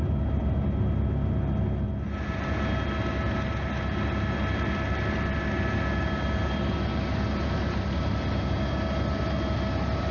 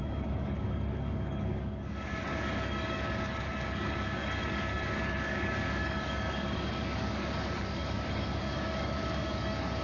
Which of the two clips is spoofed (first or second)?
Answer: second